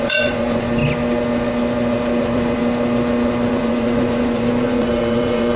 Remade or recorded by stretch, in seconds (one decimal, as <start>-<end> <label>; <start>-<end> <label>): 0.0-0.8 remade; 0.8-2.2 recorded; 2.2-2.6 remade; 2.6-3.5 recorded; 3.5-5.6 remade